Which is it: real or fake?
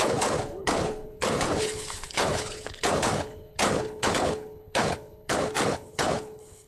fake